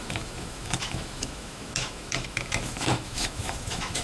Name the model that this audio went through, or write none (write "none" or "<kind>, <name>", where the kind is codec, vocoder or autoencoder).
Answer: autoencoder, DAC-VAE